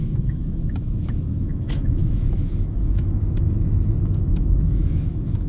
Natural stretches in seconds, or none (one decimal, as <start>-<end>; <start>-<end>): none